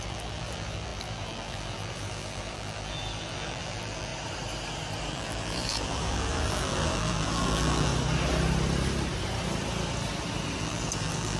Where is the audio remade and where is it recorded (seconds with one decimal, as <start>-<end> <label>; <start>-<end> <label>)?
0.0-4.1 remade; 4.1-5.1 recorded; 5.1-7.9 remade; 7.9-10.6 recorded; 10.6-11.4 remade